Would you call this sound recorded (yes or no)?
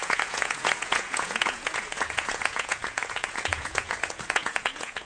no